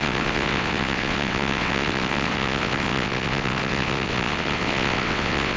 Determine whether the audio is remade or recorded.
remade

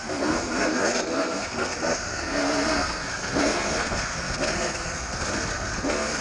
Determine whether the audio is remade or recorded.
remade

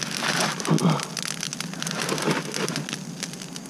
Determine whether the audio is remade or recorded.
recorded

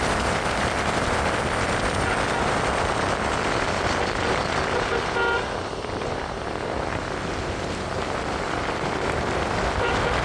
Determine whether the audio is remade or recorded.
recorded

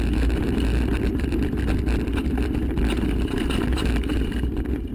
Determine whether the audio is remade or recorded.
remade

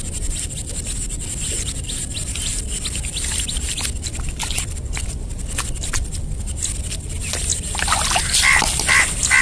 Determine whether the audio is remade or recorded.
recorded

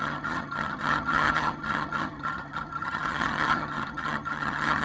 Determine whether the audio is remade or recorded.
remade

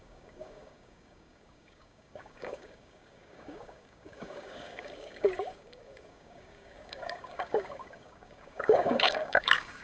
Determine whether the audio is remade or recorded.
remade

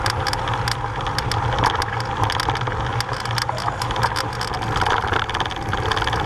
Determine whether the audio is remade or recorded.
recorded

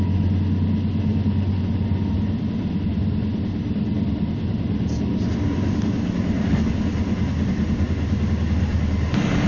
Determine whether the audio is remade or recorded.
recorded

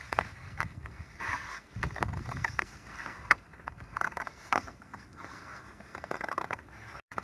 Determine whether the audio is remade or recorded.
remade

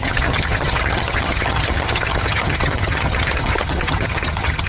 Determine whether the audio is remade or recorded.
remade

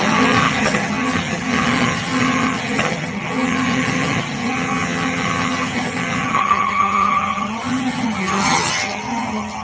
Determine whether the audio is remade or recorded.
remade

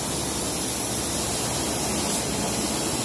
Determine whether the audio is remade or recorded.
recorded